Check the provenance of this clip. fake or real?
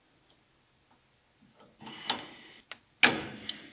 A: real